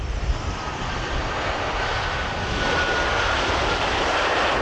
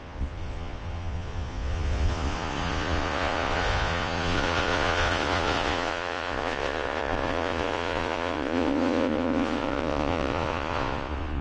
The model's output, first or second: second